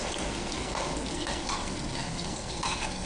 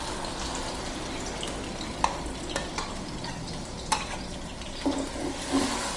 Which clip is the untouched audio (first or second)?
second